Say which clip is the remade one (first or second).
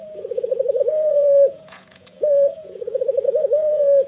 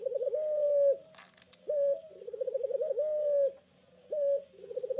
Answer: first